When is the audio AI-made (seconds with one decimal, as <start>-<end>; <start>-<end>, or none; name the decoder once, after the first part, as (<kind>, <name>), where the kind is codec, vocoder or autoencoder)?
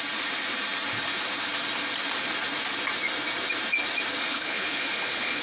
4.2-5.4 (codec, HILCodec)